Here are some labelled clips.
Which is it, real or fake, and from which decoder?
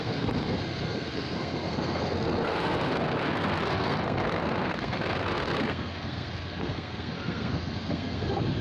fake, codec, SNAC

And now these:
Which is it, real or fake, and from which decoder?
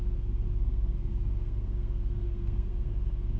fake, codec, SNAC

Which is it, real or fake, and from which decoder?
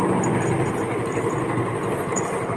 real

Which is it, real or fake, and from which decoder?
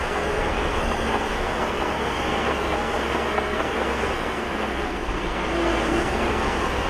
fake, codec, SNAC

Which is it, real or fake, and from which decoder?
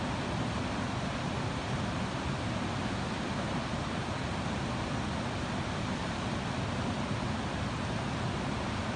real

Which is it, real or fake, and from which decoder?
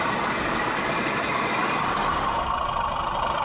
real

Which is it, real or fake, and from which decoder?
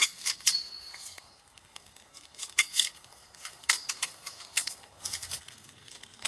fake, codec, SNAC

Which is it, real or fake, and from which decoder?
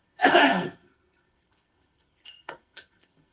fake, codec, SNAC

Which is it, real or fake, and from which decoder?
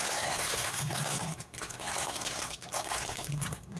fake, codec, SNAC